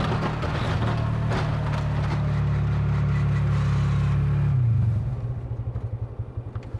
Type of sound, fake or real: real